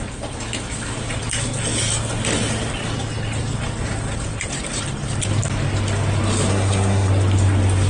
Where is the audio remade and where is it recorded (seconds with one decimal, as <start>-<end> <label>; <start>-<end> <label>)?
0.0-6.5 recorded; 6.5-7.1 remade; 7.1-7.9 recorded